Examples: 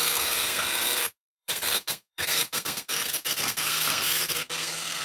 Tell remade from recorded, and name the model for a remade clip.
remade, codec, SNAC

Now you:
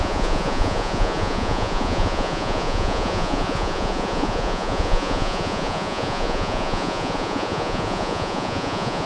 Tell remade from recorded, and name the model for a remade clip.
remade, vocoder, Vocos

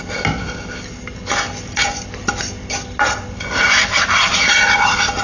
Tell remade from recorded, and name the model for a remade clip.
recorded